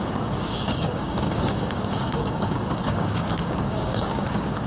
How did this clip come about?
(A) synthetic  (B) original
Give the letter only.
A